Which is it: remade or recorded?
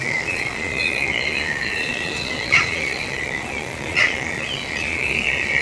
remade